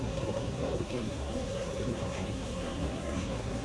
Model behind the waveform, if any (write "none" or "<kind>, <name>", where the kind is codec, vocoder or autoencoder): codec, SNAC